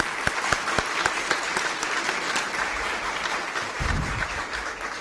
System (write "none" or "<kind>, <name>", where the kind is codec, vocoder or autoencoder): vocoder, BigVGAN v2